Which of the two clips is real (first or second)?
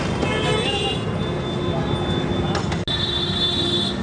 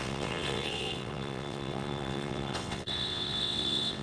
first